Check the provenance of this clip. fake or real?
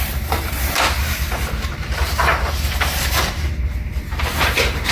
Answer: fake